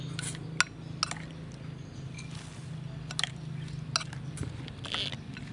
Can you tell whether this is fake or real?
real